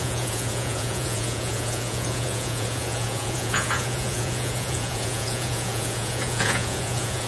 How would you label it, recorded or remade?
remade